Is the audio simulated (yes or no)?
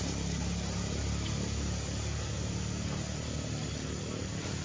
no